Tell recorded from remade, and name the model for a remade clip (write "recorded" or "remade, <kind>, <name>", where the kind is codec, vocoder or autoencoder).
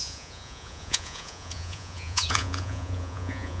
remade, vocoder, Vocos